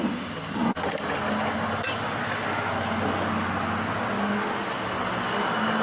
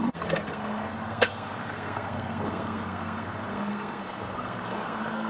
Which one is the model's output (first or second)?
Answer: second